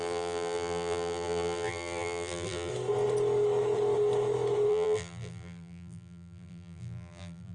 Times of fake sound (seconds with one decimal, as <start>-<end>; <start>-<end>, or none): 0.0-2.7; 4.7-7.5